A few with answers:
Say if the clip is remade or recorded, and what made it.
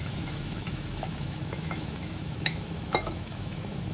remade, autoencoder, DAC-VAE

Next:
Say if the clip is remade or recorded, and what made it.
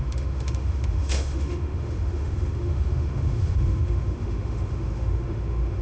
remade, autoencoder, DAC-VAE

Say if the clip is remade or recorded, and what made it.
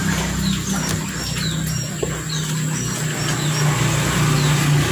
recorded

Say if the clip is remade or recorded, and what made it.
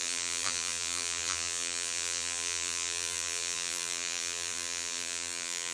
remade, vocoder, BigVGAN v2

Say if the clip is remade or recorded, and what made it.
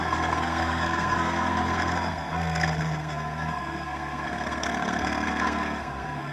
remade, codec, SNAC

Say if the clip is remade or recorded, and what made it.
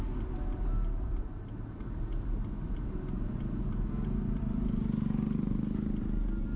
recorded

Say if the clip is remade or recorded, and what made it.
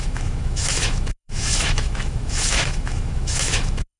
remade, autoencoder, DAC-VAE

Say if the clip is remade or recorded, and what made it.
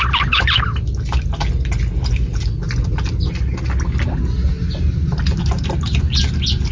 recorded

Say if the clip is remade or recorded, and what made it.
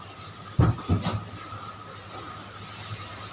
recorded